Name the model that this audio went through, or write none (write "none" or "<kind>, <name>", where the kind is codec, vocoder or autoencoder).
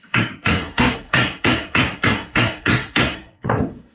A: codec, SNAC